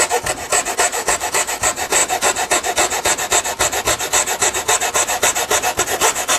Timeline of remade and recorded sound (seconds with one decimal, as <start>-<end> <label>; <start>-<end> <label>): 0.0-0.9 recorded; 0.9-1.6 remade; 1.6-6.4 recorded